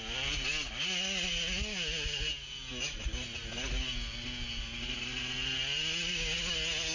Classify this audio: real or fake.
real